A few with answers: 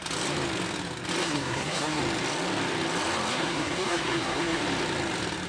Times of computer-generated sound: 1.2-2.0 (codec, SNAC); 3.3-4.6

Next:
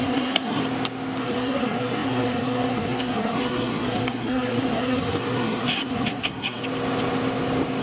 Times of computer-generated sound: 0.0-0.6 (codec, SNAC); 1.2-6.6